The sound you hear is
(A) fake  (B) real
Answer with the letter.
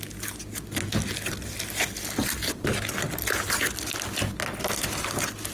B